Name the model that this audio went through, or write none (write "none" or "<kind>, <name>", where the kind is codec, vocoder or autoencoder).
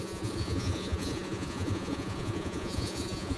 vocoder, Vocos